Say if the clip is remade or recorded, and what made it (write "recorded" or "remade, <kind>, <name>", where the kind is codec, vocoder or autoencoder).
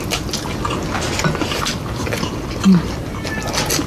recorded